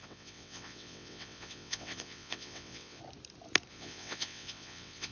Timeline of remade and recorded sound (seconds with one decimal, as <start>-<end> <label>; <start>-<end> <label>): 0.0-3.0 remade; 3.0-3.7 recorded; 3.7-5.1 remade